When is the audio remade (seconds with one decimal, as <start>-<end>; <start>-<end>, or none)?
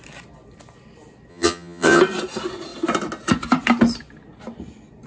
1.3-2.0